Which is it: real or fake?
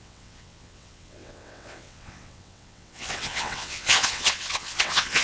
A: fake